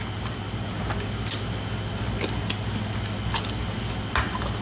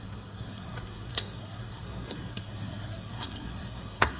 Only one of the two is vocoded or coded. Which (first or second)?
second